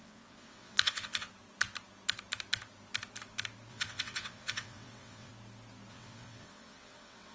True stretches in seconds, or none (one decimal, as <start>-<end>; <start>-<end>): 1.3-3.7; 5.3-5.9